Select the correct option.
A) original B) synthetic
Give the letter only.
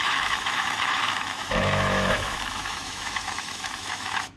B